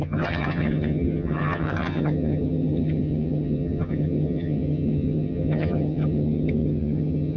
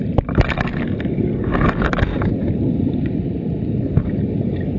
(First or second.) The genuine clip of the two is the second